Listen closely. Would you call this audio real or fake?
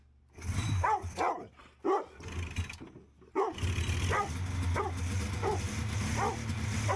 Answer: real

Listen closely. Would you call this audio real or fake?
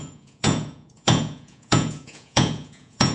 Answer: fake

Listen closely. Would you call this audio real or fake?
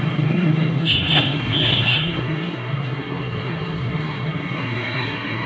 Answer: fake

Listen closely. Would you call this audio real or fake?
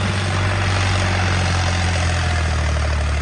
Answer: real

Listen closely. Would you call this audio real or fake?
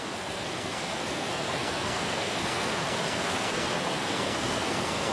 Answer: fake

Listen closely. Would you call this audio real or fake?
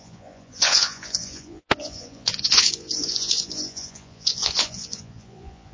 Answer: fake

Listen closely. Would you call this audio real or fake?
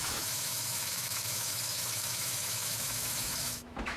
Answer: fake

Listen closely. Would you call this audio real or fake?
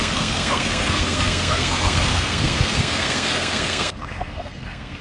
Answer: fake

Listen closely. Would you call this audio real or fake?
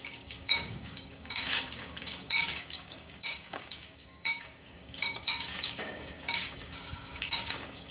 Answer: fake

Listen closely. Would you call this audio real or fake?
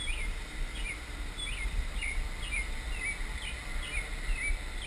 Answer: real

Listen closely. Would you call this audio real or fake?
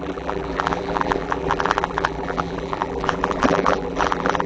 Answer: fake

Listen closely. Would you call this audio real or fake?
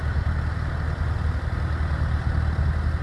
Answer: real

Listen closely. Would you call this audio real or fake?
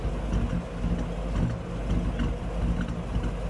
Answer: real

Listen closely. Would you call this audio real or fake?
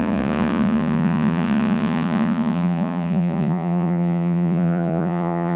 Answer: fake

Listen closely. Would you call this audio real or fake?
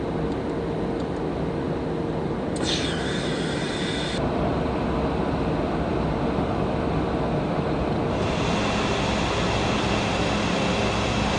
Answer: real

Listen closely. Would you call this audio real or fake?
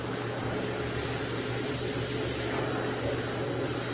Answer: real